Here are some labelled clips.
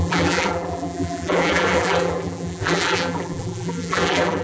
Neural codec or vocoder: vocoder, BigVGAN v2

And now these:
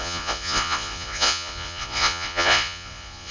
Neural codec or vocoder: vocoder, Vocos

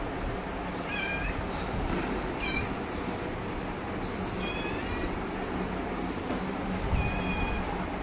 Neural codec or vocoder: none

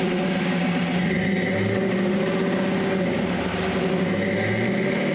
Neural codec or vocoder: none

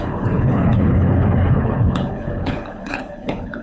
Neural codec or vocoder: codec, HILCodec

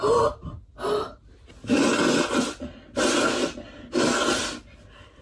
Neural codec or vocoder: none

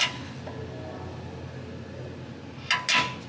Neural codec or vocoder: none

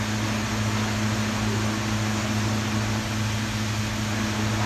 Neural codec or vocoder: none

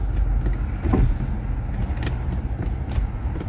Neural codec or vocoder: none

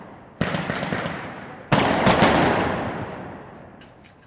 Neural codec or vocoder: vocoder, BigVGAN v2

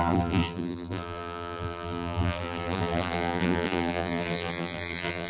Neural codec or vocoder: vocoder, BigVGAN v2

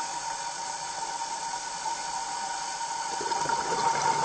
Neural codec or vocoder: none